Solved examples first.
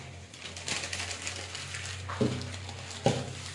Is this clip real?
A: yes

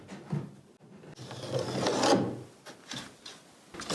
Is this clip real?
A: yes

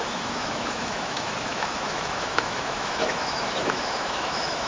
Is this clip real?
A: no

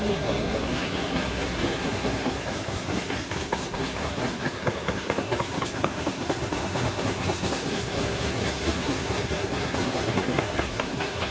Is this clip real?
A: no